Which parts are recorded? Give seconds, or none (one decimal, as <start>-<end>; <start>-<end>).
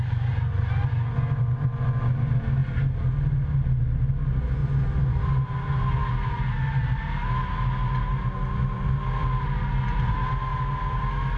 0.0-11.4